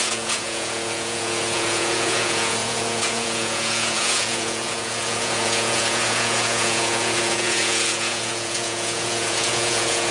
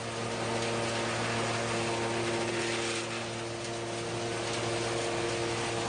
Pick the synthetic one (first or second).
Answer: first